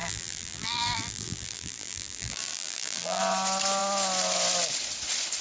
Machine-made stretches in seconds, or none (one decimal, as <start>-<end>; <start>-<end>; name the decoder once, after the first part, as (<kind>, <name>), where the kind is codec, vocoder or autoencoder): 0.0-3.2 (vocoder, BigVGAN v2)